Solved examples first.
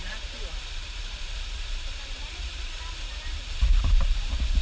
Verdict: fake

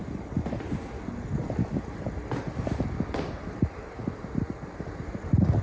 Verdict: real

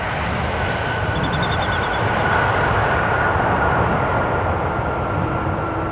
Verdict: real